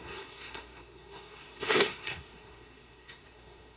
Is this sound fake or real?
fake